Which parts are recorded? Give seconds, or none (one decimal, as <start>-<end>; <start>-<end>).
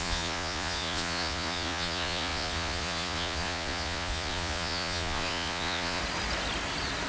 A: 6.0-7.1